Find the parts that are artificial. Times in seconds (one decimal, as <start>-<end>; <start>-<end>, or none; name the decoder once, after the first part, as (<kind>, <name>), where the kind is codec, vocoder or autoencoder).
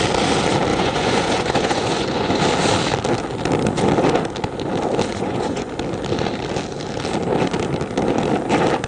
0.7-2.4 (vocoder, Vocos); 5.1-5.7